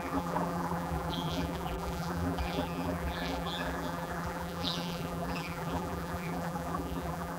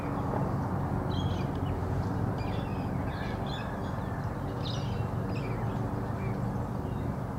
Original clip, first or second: second